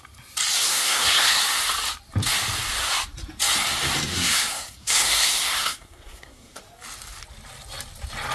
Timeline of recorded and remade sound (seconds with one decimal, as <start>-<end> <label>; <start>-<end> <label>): 0.0-0.7 recorded; 0.7-1.4 remade; 1.4-4.1 recorded; 4.1-6.6 remade; 6.6-8.3 recorded